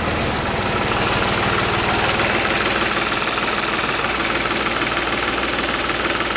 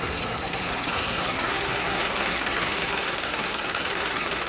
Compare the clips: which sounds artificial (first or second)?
second